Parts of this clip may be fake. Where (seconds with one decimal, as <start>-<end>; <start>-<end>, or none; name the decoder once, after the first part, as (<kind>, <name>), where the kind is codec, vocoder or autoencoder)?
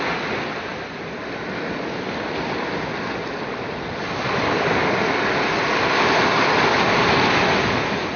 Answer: none